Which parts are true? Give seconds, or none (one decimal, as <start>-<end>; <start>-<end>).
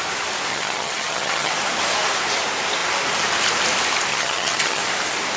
0.0-0.5; 1.5-4.1; 4.8-5.4